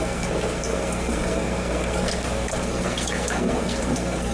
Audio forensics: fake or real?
fake